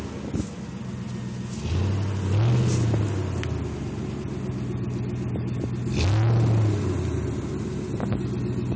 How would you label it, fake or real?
real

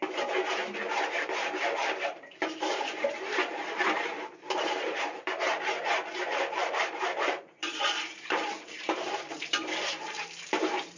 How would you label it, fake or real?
fake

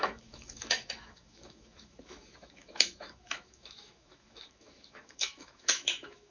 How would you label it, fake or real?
fake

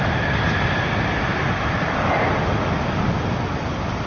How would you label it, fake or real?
fake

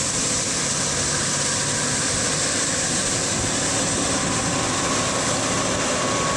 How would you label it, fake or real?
fake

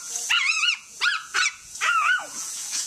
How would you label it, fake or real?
fake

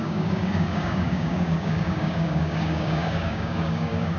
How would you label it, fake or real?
fake